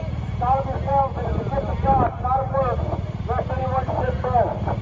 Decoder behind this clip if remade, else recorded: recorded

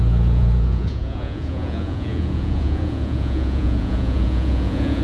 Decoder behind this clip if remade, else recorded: remade, vocoder, Vocos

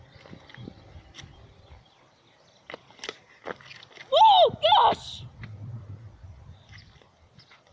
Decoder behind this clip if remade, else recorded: remade, vocoder, BigVGAN v2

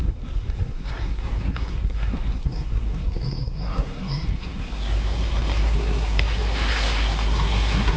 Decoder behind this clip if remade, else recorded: remade, codec, SNAC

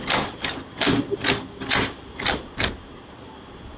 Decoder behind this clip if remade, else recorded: recorded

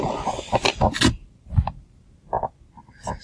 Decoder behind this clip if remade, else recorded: recorded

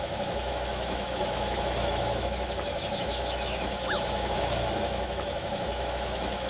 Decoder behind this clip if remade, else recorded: remade, autoencoder, DAC-VAE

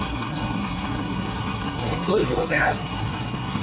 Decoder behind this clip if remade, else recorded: remade, codec, SNAC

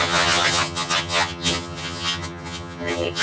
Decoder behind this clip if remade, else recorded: remade, vocoder, HiFi-GAN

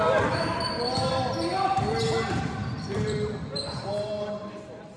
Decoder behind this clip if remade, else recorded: remade, vocoder, BigVGAN v2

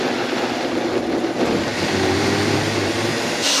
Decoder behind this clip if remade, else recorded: recorded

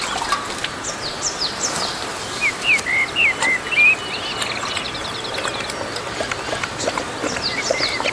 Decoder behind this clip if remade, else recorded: recorded